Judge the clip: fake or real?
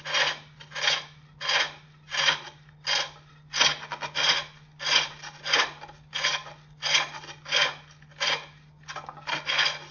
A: real